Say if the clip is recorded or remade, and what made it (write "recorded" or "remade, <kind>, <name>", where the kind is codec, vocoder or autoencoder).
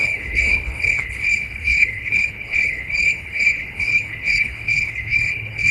remade, codec, HILCodec